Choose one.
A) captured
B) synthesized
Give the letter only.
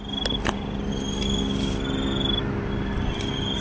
A